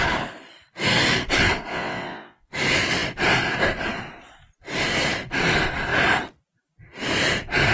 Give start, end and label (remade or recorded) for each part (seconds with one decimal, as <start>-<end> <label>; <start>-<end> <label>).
0.0-1.7 recorded; 1.7-2.5 remade; 2.5-7.7 recorded